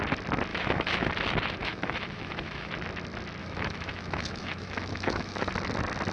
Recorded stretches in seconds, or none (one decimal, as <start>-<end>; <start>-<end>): 0.0-0.5; 1.1-1.6; 2.7-3.4; 5.5-6.1